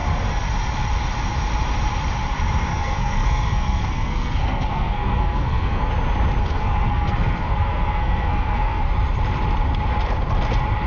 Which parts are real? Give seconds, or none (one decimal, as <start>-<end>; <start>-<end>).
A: 0.0-2.7; 5.9-6.4; 8.9-10.9